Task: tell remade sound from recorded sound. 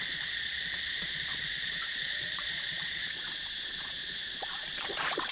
remade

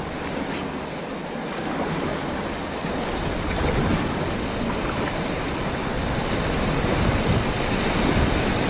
recorded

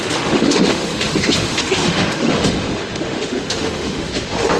remade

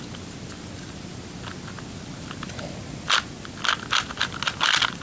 recorded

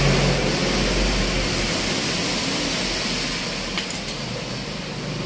recorded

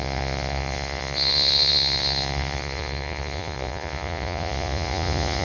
remade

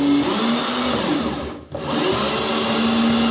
recorded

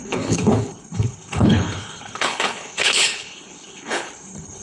remade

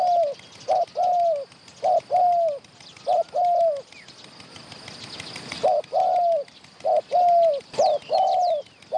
recorded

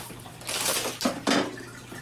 recorded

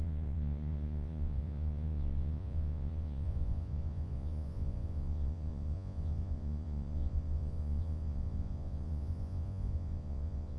remade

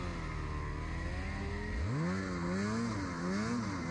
recorded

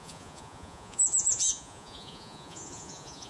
remade